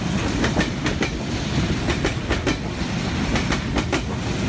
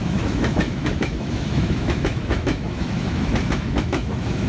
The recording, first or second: first